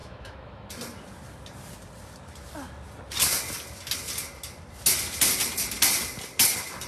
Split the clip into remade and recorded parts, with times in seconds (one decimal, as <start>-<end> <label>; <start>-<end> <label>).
0.0-0.7 remade; 0.7-6.9 recorded